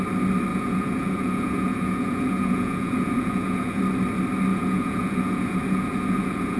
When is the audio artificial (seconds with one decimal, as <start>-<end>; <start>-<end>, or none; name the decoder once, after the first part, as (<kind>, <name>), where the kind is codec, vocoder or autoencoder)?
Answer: 0.5-3.8 (vocoder, Vocos); 4.5-6.6